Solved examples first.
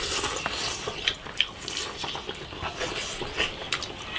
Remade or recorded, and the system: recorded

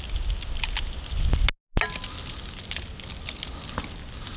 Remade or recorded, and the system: recorded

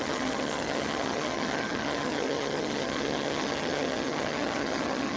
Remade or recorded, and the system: remade, vocoder, HiFi-GAN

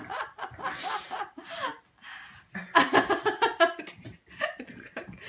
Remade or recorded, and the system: recorded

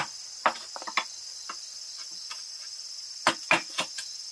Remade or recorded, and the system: recorded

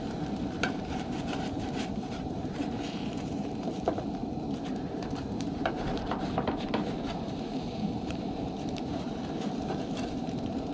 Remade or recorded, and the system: remade, vocoder, BigVGAN v2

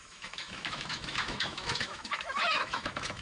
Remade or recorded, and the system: remade, autoencoder, DAC-VAE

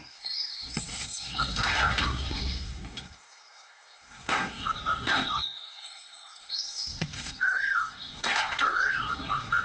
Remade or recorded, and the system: remade, codec, SNAC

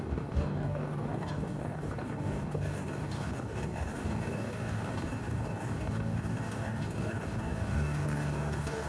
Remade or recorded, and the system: remade, codec, DAC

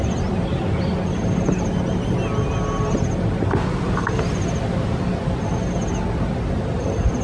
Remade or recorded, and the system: recorded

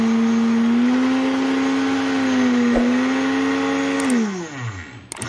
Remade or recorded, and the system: recorded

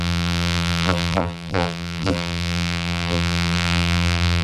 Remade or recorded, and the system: remade, vocoder, BigVGAN v2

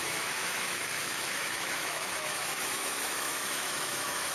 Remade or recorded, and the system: remade, autoencoder, DAC-VAE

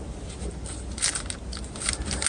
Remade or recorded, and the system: recorded